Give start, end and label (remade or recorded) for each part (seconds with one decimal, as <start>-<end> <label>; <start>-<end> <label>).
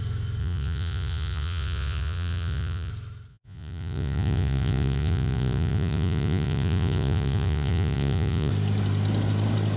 0.0-0.4 recorded; 0.4-2.9 remade; 2.9-3.3 recorded; 3.3-8.5 remade; 8.5-9.8 recorded